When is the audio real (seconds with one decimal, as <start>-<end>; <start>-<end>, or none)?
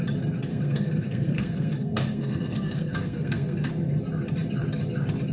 0.0-0.5; 3.7-5.3